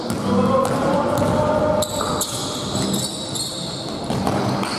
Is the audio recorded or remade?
recorded